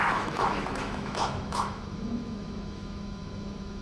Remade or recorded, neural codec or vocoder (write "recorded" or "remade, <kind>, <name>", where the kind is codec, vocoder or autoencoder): remade, autoencoder, DAC-VAE